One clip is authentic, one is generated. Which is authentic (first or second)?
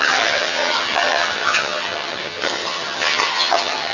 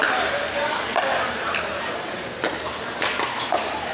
second